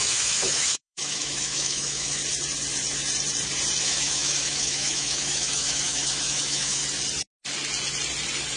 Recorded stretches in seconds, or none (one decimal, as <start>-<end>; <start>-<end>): 2.2-3.8; 6.8-8.6